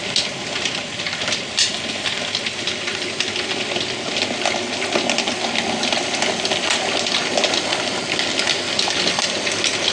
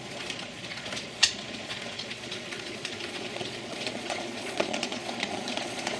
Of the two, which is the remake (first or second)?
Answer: second